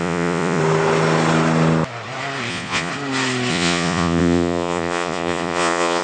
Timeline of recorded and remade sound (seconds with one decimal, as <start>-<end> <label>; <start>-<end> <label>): 0.0-0.6 remade; 0.6-2.5 recorded; 2.5-2.9 remade; 2.9-3.5 recorded; 3.5-6.0 remade